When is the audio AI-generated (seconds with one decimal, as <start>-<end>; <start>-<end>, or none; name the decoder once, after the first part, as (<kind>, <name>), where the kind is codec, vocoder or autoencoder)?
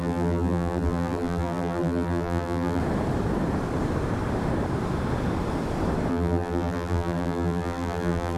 0.0-2.8 (vocoder, BigVGAN v2); 6.1-8.4